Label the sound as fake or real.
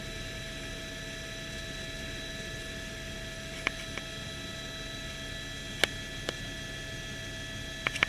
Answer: real